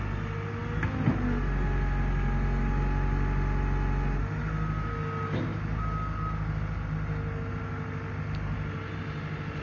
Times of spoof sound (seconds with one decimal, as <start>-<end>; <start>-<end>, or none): none